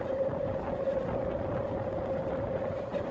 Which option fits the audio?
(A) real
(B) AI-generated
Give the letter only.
A